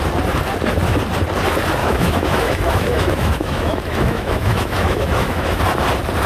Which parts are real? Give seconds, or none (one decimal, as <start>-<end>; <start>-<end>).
0.0-1.8; 5.6-6.3